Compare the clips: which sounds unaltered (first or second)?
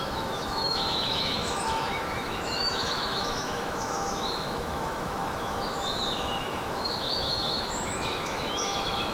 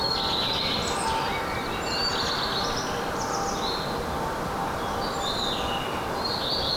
second